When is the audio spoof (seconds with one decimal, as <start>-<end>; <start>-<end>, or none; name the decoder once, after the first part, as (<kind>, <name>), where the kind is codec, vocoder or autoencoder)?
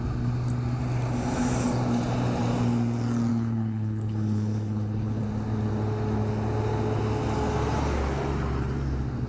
3.3-5.2 (codec, HILCodec)